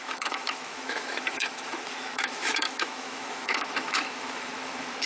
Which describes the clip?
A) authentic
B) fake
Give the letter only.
B